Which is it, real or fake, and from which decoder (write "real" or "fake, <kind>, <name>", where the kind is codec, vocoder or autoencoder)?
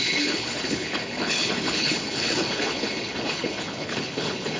fake, codec, HILCodec